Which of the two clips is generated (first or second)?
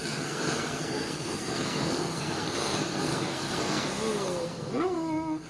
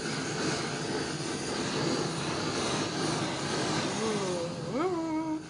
first